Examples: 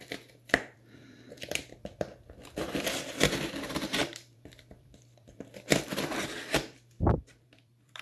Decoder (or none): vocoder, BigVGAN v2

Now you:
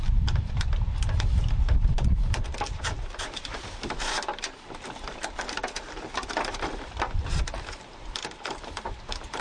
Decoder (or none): vocoder, BigVGAN v2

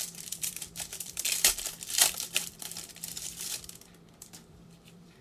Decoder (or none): vocoder, BigVGAN v2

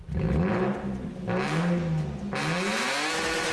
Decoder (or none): none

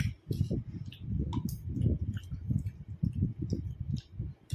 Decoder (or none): none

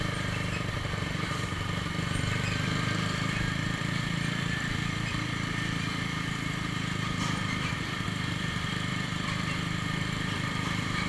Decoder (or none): vocoder, BigVGAN v2